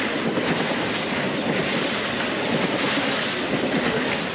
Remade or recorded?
recorded